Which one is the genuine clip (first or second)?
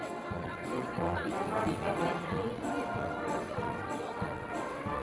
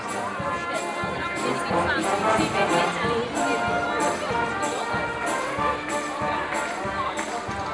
second